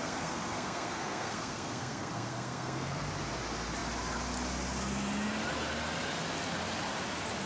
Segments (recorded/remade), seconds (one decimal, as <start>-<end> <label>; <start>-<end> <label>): 0.0-3.1 remade; 3.1-7.5 recorded